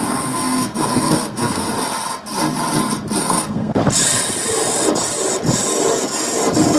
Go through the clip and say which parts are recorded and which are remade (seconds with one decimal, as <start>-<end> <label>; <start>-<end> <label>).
0.0-1.7 remade; 1.7-3.2 recorded; 3.2-3.8 remade; 3.8-6.8 recorded